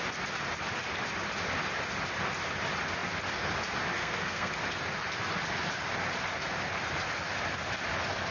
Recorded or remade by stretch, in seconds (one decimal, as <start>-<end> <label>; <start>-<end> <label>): 0.0-4.0 recorded; 4.0-4.5 remade; 4.5-8.3 recorded